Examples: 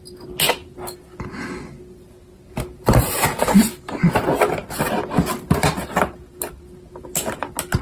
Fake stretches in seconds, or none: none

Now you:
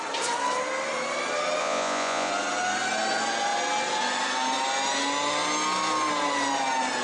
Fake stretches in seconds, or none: 1.6-2.3 (vocoder, Vocos)

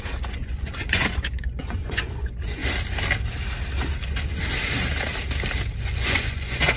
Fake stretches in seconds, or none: 0.0-2.6 (vocoder, Vocos); 5.8-6.8

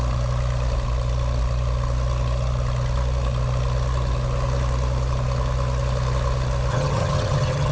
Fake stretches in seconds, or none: 6.7-7.7 (vocoder, HiFi-GAN)